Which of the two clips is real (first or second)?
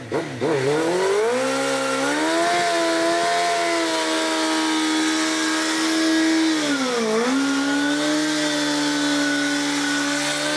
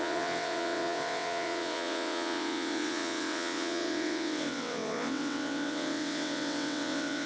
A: first